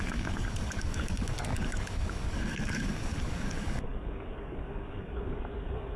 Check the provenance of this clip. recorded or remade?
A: remade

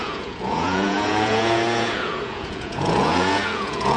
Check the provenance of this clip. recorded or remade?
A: remade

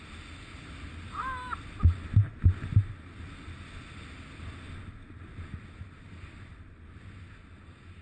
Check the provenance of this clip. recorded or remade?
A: recorded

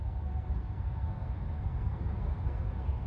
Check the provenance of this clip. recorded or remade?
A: remade